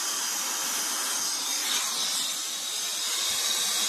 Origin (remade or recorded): recorded